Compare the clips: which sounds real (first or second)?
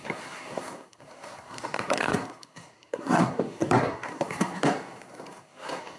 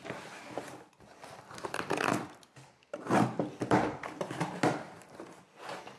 second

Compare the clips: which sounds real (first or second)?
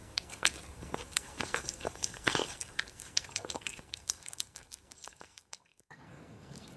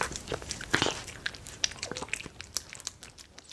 second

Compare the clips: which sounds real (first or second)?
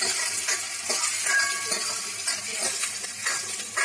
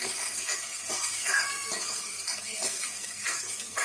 first